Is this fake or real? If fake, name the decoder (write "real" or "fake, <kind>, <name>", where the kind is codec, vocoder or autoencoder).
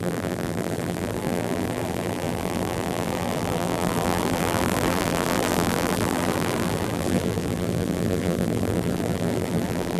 fake, vocoder, BigVGAN v2